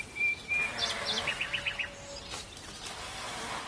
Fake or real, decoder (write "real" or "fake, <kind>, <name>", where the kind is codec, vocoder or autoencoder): fake, vocoder, BigVGAN v2